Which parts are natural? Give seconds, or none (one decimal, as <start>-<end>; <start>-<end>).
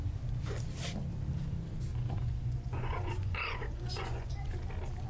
0.0-1.9; 4.5-5.1